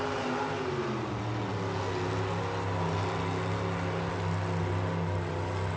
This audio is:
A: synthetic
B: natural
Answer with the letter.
B